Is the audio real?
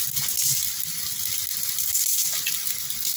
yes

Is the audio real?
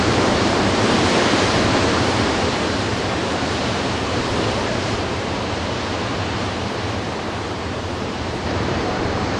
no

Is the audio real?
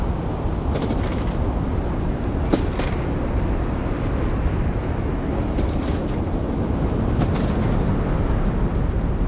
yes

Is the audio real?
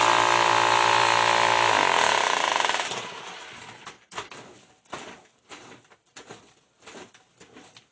yes